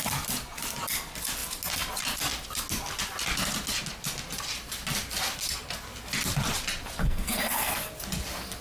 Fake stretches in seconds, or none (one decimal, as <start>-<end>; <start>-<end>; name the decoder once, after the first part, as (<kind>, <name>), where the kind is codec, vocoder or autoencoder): 7.0-7.9 (codec, SNAC)